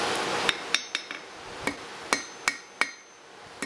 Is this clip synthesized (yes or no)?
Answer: no